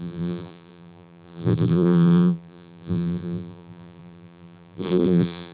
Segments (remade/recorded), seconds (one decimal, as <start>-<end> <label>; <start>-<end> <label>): 0.0-5.5 remade